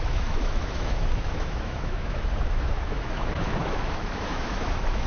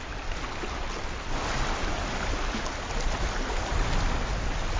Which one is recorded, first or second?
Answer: second